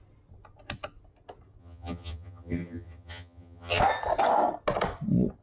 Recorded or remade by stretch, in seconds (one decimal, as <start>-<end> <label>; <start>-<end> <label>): 0.0-1.6 recorded; 1.6-3.8 remade; 3.8-5.4 recorded